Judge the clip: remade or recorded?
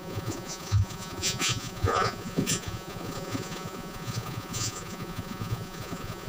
remade